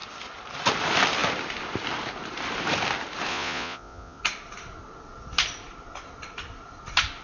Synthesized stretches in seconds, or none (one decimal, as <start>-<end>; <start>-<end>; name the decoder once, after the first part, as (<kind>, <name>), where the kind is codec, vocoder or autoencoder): 3.3-4.2 (vocoder, Vocos)